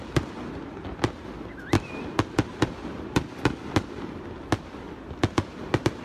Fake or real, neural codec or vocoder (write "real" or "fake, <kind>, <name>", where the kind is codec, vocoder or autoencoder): real